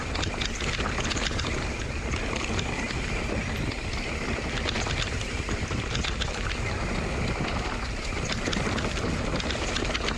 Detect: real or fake real